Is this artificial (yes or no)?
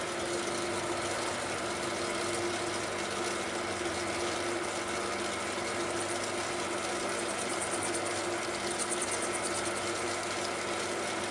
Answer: no